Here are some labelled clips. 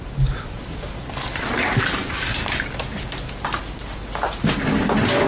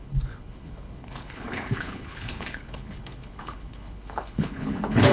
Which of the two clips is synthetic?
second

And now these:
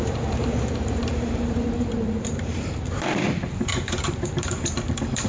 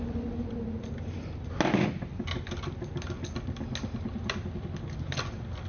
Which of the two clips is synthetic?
first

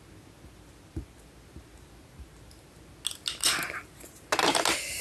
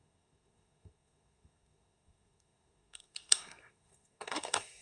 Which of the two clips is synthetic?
second